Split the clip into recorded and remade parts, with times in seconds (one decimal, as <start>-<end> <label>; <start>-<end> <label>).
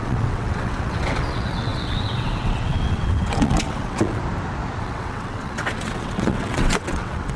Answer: 0.0-4.2 remade; 4.2-4.8 recorded; 4.8-7.4 remade